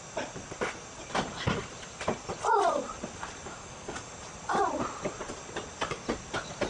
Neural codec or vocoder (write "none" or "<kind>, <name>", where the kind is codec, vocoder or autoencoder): none